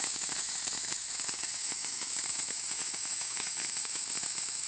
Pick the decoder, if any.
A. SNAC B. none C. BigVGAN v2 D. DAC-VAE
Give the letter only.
D